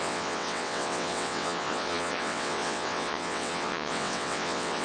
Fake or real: fake